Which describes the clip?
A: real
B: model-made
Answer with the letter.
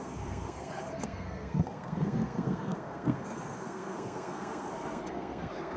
B